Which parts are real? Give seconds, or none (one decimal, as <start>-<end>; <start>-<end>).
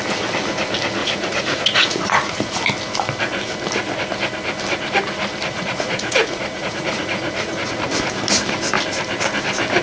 0.0-1.0; 2.6-5.5; 7.7-9.8